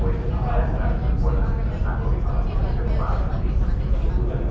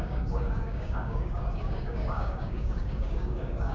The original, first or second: first